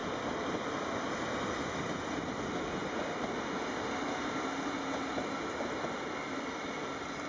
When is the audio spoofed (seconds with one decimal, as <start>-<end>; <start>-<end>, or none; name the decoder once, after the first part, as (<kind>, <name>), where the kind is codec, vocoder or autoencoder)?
0.0-0.9 (vocoder, BigVGAN v2)